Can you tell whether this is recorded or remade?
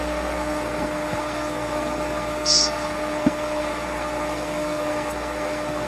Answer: remade